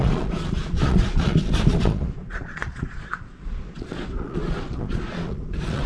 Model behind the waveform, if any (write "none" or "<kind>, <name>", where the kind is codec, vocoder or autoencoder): vocoder, Vocos